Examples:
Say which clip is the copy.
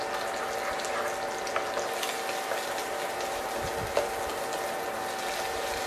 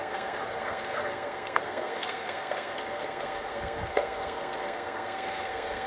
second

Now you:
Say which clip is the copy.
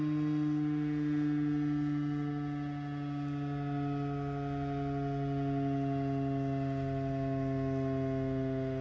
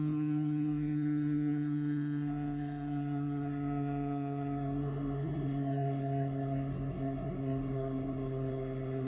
second